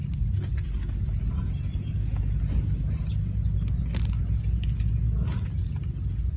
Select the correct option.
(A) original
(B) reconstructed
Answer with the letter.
A